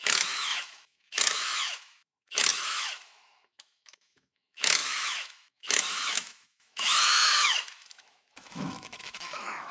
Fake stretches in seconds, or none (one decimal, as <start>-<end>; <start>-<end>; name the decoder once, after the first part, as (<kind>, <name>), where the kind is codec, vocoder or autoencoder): 0.0-9.7 (autoencoder, DAC-VAE)